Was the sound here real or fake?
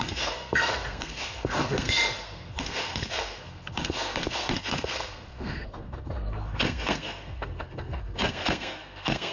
fake